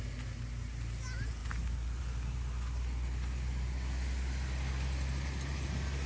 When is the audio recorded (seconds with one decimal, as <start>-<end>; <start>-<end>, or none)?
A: 0.0-6.1